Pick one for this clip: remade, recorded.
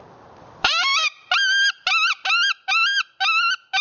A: recorded